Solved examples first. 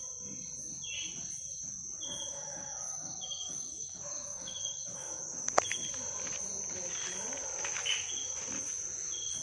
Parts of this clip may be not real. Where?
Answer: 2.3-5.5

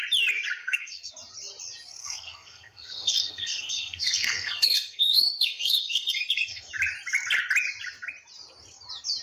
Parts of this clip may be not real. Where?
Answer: 0.6-1.1; 2.0-6.7

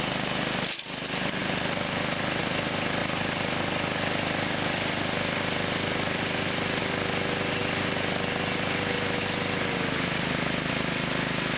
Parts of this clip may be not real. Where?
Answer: none

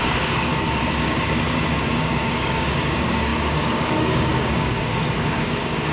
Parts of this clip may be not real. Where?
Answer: 0.0-5.9

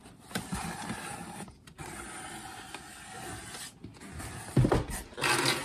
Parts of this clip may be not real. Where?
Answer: none